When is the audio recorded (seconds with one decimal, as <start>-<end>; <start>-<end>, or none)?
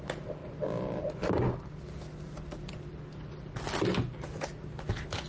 0.0-5.3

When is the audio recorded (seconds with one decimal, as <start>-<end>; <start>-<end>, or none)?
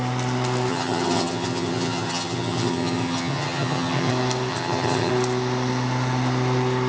0.0-0.7; 4.1-4.5; 5.1-6.9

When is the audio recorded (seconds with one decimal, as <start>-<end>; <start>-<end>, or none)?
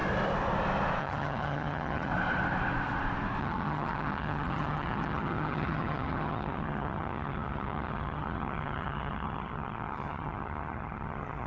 0.0-1.0; 2.1-3.4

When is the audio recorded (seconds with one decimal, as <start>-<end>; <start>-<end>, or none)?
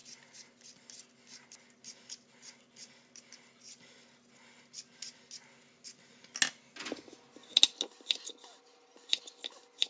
0.0-9.9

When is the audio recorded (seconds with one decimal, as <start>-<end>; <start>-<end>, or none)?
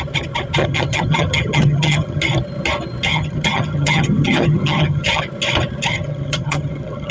0.0-0.6; 2.2-3.1; 5.2-5.9